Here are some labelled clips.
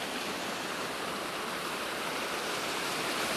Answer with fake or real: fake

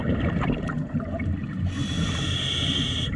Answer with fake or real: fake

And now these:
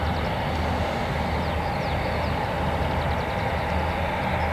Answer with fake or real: real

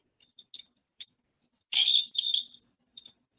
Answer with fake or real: real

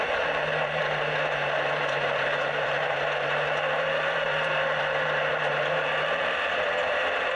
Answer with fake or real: fake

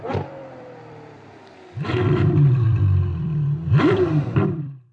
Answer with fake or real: fake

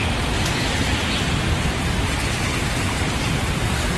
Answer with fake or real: real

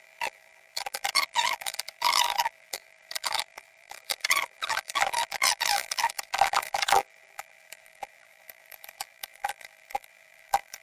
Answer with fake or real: fake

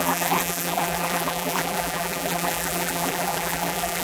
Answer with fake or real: fake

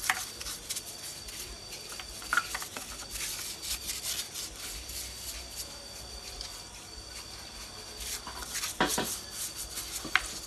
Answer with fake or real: real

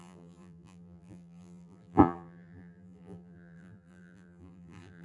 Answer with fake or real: fake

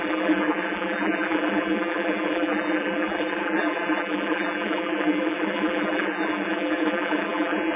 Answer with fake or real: fake